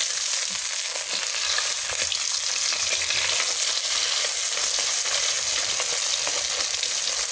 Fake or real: real